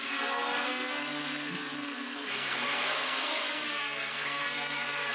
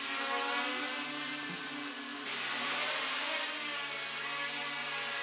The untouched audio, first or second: second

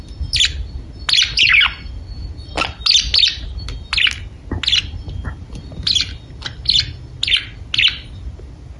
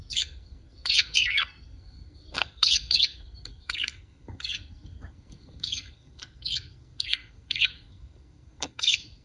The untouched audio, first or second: first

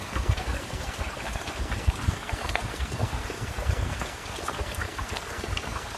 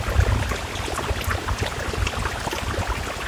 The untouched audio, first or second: second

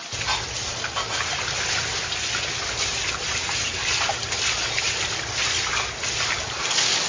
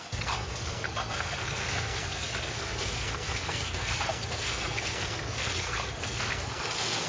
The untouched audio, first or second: first